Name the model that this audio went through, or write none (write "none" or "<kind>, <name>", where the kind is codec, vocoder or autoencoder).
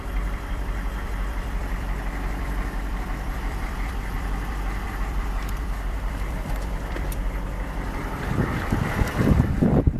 vocoder, BigVGAN v2